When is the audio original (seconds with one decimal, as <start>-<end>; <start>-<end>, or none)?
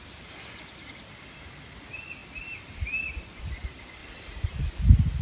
0.0-5.2